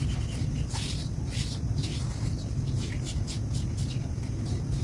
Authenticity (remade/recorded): recorded